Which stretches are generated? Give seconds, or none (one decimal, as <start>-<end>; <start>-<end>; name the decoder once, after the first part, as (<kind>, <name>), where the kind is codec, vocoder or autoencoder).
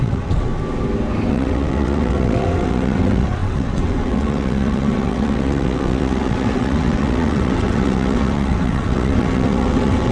0.0-0.5 (vocoder, WaveNeXt); 1.3-10.1